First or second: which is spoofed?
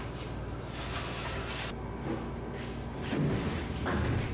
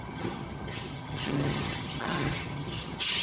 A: second